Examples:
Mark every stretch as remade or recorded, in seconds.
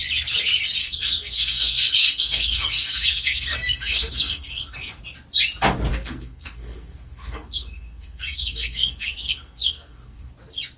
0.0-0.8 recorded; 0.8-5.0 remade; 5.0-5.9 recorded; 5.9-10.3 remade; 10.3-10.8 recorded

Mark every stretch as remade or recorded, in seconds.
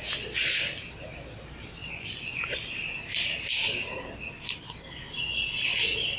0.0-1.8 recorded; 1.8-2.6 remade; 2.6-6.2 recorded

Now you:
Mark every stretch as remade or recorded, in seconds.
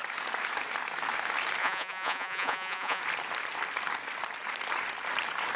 0.0-1.6 recorded; 1.6-3.0 remade; 3.0-5.6 recorded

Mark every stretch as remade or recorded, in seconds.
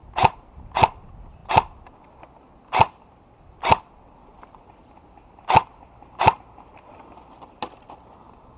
0.0-8.6 recorded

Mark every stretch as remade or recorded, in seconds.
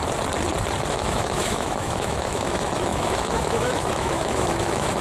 0.0-0.9 recorded; 0.9-5.0 remade